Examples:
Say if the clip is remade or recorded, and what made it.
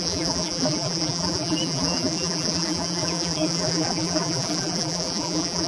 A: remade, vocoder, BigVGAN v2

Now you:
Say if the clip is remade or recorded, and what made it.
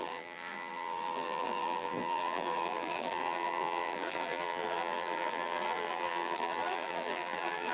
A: remade, vocoder, BigVGAN v2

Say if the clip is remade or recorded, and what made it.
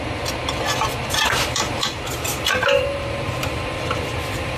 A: recorded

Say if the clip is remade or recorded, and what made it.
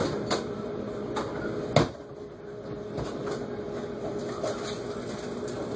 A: recorded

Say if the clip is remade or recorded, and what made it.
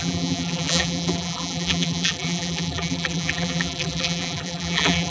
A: remade, vocoder, BigVGAN v2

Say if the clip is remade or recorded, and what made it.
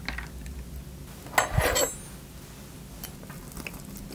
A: recorded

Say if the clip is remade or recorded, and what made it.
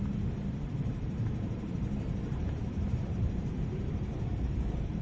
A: remade, vocoder, BigVGAN v2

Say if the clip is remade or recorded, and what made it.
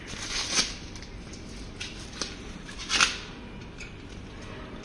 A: recorded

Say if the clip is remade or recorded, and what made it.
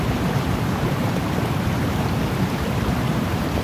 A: remade, vocoder, BigVGAN v2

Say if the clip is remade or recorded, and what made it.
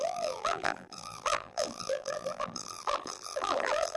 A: remade, vocoder, BigVGAN v2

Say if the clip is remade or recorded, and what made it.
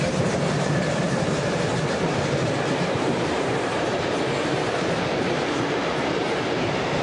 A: remade, vocoder, BigVGAN v2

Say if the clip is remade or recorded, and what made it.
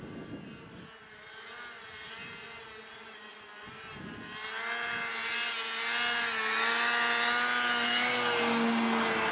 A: recorded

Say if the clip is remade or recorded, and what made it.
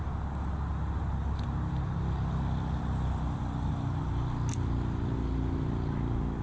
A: recorded